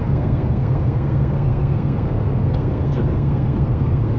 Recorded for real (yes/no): no